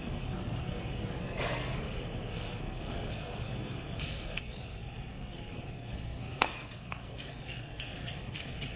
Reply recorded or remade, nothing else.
remade